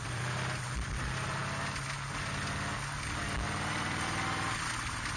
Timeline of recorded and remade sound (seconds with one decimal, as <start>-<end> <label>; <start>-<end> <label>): 0.0-1.4 remade; 1.4-3.7 recorded; 3.7-5.2 remade